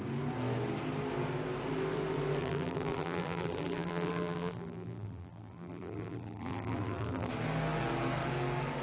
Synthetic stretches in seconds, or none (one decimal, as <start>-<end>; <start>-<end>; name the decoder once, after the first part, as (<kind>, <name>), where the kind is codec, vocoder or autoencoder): 2.4-7.3 (vocoder, BigVGAN v2)